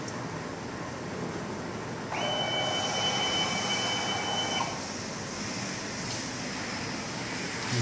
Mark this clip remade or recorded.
recorded